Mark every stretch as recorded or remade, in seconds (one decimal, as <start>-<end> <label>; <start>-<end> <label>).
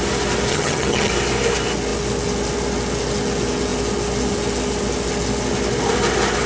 0.0-0.5 recorded; 0.5-1.1 remade; 1.1-6.5 recorded